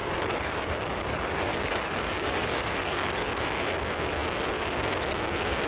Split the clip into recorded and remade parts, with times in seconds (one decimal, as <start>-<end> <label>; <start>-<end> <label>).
0.0-3.1 remade; 3.1-5.7 recorded